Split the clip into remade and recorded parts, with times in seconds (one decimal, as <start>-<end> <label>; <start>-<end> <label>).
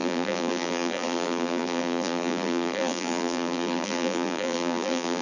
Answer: 0.0-5.2 remade